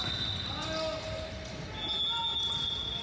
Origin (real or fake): real